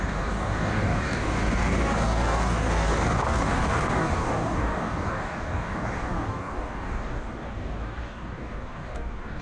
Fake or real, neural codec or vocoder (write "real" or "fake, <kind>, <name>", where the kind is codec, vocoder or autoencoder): fake, codec, DAC